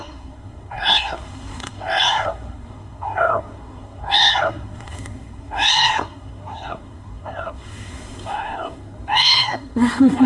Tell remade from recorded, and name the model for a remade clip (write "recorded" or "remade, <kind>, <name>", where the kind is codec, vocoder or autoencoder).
remade, codec, SNAC